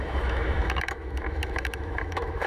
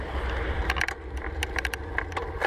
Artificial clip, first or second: first